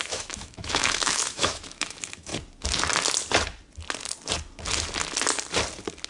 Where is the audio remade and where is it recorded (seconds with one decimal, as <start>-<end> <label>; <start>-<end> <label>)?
0.0-2.3 remade; 2.3-6.1 recorded